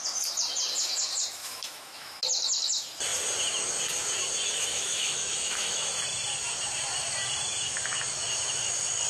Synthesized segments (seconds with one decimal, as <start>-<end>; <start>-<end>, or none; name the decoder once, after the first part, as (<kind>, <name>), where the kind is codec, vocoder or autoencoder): 1.4-2.2 (autoencoder, DAC-VAE); 4.7-5.9